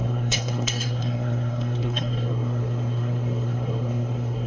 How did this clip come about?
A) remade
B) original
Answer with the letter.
A